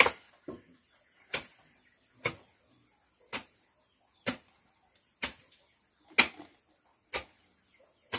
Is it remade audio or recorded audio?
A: recorded